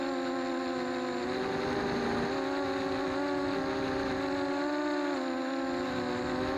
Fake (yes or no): no